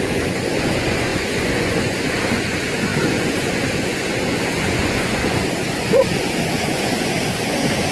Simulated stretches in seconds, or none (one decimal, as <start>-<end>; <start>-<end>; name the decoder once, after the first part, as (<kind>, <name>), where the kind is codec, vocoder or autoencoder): 0.0-7.9 (vocoder, Vocos)